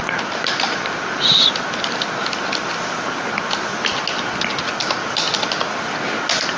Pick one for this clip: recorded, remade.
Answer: recorded